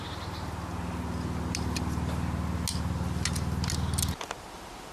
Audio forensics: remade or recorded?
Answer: recorded